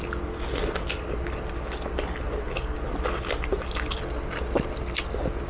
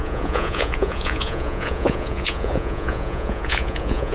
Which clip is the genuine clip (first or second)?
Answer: first